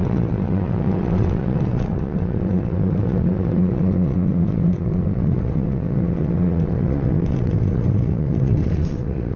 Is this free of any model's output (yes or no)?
no